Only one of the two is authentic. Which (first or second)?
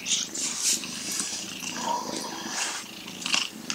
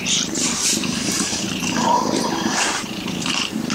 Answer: first